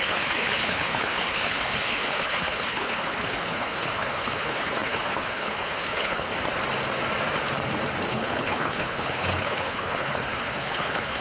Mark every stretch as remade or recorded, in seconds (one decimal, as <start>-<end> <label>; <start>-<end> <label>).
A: 0.0-6.3 remade; 6.3-8.1 recorded; 8.1-11.2 remade